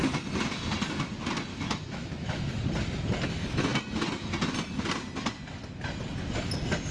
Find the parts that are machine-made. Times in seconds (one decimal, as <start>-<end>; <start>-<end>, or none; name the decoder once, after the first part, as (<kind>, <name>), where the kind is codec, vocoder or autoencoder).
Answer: 1.5-2.6 (autoencoder, DAC-VAE)